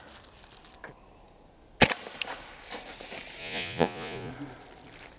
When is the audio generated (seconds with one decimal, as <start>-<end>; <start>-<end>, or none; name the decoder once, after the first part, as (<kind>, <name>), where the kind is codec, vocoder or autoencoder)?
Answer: 3.4-4.3 (vocoder, Vocos)